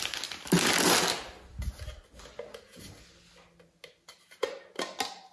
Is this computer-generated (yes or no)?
no